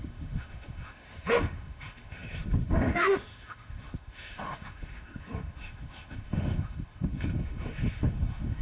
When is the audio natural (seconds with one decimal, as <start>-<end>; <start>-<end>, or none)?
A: none